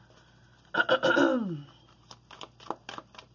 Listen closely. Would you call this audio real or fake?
real